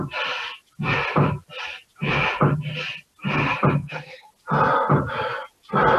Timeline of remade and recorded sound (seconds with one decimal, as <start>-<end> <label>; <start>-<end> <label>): 0.0-3.8 recorded; 3.8-4.3 remade; 4.3-6.0 recorded

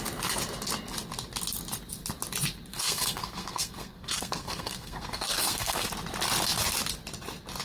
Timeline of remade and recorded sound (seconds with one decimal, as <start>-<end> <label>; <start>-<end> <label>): 0.0-2.7 recorded; 2.7-5.9 remade; 5.9-7.6 recorded

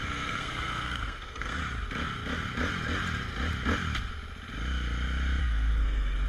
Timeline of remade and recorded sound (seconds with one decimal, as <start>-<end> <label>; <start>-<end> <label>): 0.0-1.6 remade; 1.6-5.4 recorded; 5.4-6.3 remade

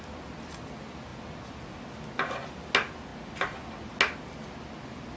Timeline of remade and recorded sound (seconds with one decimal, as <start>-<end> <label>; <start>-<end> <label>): 0.0-5.2 recorded

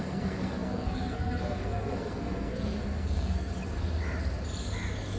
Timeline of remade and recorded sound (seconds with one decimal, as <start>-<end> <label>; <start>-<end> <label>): 0.0-3.5 remade; 3.5-5.2 recorded

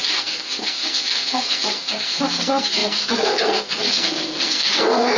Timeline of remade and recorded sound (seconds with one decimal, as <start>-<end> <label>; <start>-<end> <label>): 0.0-5.2 remade